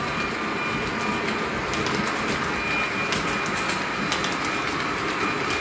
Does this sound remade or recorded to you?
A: recorded